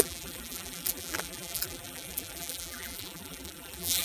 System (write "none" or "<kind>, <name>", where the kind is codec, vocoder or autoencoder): vocoder, BigVGAN v2